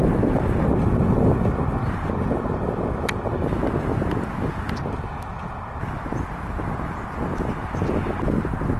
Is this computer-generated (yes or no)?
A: no